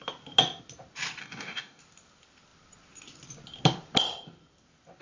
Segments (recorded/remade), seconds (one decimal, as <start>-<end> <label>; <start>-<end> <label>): 0.0-1.2 recorded; 1.2-1.8 remade; 1.8-5.0 recorded